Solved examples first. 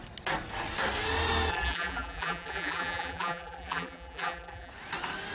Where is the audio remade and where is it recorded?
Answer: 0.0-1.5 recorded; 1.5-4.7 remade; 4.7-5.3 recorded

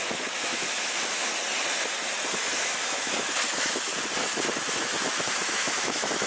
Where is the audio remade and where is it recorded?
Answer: 0.0-1.3 remade; 1.3-2.4 recorded; 2.4-3.9 remade; 3.9-4.8 recorded; 4.8-6.3 remade

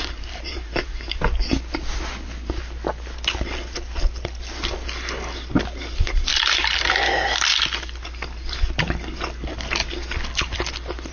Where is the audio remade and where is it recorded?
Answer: 0.0-1.2 remade; 1.2-6.3 recorded; 6.3-6.9 remade; 6.9-11.1 recorded

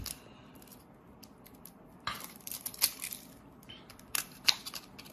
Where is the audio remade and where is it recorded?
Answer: 0.0-0.7 remade; 0.7-1.7 recorded; 1.7-5.1 remade